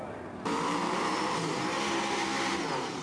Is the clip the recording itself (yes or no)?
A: no